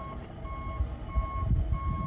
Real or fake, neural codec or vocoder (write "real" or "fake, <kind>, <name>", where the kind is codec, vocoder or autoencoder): real